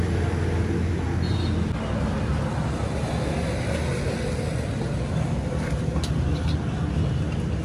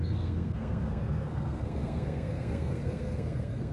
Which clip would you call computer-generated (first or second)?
second